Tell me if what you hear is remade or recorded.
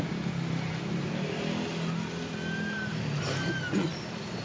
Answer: recorded